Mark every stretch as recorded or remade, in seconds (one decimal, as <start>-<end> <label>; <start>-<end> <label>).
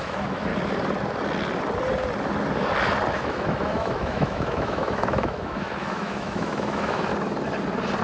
0.0-0.5 remade; 0.5-3.1 recorded; 3.1-7.1 remade; 7.1-8.0 recorded